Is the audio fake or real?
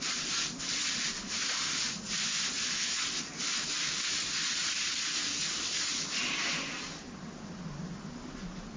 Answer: real